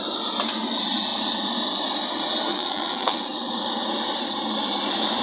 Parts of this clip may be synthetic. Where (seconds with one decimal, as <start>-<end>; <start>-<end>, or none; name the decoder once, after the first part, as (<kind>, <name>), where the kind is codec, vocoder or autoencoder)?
2.5-3.5 (vocoder, WaveNeXt)